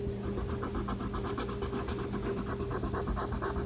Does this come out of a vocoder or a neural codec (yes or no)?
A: no